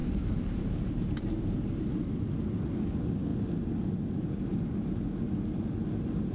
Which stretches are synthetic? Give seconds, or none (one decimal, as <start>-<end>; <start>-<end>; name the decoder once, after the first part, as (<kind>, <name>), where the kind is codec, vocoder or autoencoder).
0.0-2.0 (vocoder, BigVGAN v2)